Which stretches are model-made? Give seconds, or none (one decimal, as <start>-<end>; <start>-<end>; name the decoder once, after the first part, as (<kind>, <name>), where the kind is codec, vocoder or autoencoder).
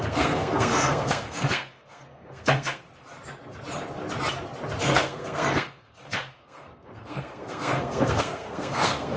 0.0-2.9 (codec, SNAC); 4.8-9.2